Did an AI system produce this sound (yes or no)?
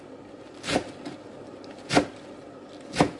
no